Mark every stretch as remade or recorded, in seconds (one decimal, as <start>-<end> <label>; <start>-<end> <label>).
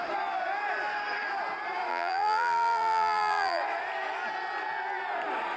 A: 0.0-1.9 recorded; 1.9-3.6 remade; 3.6-5.6 recorded